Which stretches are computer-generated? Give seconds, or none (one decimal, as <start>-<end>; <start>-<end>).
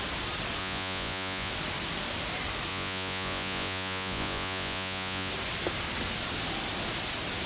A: 0.6-1.5; 2.7-5.3